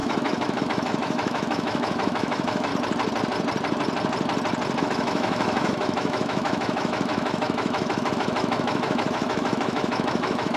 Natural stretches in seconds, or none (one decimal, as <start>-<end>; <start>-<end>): 2.7-4.8